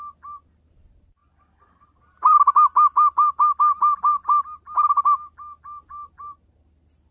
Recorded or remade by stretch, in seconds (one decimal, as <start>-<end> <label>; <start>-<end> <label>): 0.0-7.1 recorded